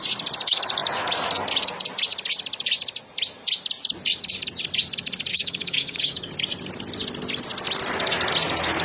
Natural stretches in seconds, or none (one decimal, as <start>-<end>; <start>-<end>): 0.0-5.3; 6.3-8.8